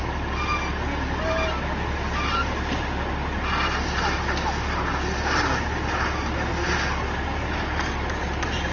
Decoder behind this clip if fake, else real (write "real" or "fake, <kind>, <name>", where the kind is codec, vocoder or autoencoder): real